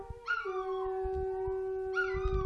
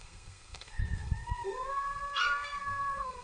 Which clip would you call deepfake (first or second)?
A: second